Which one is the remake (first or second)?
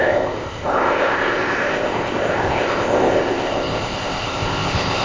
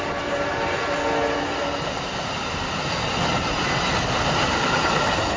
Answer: first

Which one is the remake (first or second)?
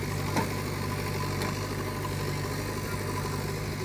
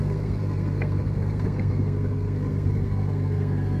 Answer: second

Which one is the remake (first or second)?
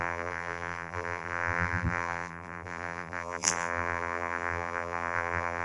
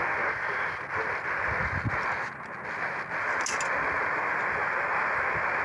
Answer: first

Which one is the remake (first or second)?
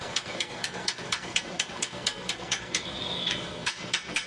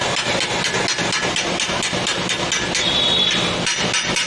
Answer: first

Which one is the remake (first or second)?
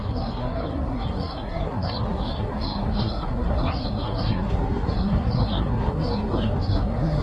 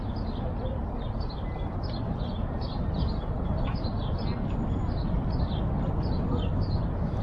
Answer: first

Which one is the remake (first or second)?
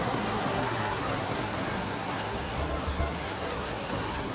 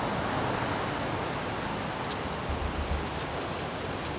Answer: first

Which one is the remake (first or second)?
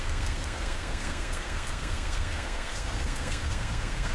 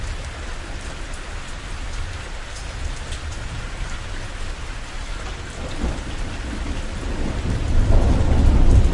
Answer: first